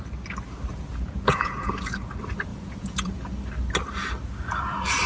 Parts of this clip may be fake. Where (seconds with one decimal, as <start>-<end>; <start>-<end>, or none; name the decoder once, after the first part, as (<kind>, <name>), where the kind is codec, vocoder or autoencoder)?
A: 0.9-1.7 (vocoder, Vocos); 2.5-3.1